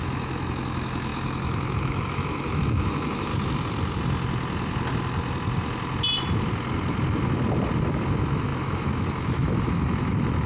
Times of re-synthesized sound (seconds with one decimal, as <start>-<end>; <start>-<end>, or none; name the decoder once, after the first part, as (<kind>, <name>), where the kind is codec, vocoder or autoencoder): 0.0-3.3 (autoencoder, DAC-VAE); 7.8-10.5